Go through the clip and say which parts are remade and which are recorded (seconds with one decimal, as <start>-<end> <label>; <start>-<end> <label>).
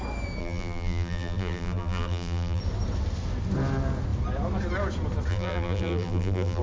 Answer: 0.0-0.4 recorded; 0.4-2.6 remade; 2.6-5.3 recorded; 5.3-6.6 remade